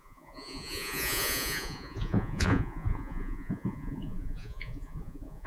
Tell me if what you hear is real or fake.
fake